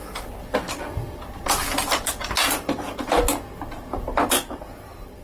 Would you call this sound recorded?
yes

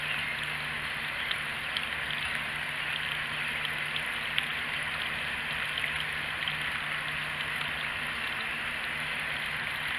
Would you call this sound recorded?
yes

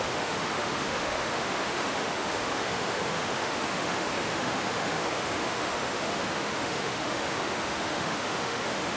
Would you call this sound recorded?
no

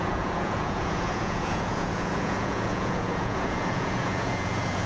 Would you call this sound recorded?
no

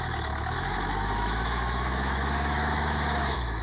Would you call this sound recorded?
no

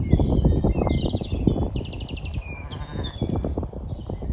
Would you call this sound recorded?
no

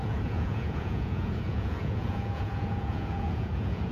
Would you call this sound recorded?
no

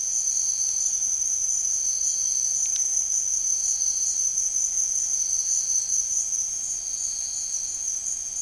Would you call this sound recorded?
yes